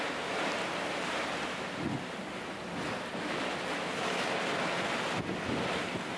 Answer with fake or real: real